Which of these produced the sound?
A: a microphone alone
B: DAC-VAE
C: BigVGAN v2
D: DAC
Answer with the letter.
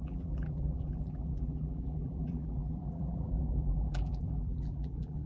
C